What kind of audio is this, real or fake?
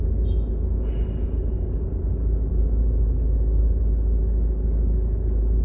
real